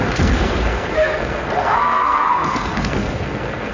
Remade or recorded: remade